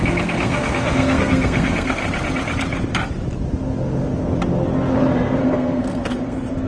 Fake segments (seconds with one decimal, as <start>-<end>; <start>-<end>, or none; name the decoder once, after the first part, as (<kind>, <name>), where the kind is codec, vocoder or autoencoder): 0.0-2.0 (codec, SNAC); 5.4-6.7